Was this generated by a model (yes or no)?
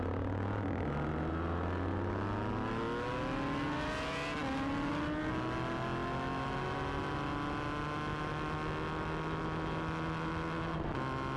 no